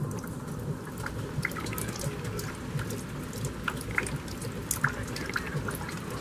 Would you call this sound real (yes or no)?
yes